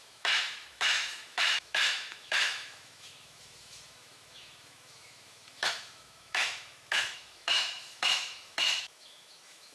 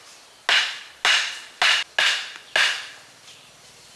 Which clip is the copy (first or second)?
first